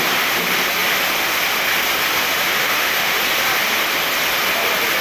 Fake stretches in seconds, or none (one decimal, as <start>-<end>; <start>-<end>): 2.6-3.2